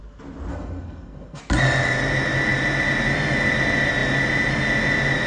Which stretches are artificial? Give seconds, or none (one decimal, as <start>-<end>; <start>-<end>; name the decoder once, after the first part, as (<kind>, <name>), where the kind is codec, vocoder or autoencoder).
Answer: 0.5-1.4 (codec, SNAC)